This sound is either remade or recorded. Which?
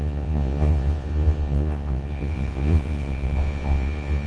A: remade